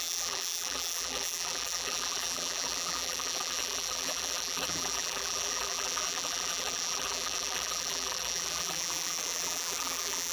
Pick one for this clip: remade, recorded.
remade